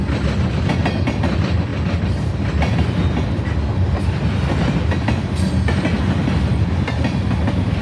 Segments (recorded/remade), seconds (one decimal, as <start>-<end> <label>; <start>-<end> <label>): 0.0-1.7 recorded; 1.7-2.3 remade; 2.3-7.8 recorded